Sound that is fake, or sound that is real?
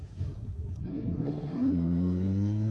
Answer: fake